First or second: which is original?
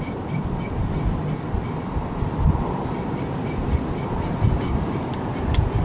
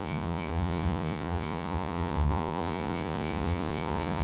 first